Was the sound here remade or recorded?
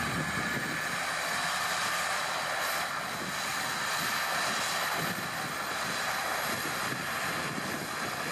recorded